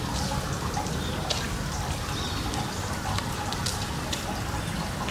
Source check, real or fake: real